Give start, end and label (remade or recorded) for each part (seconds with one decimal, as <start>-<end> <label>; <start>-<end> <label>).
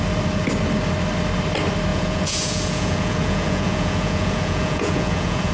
0.0-1.9 recorded; 1.9-5.5 remade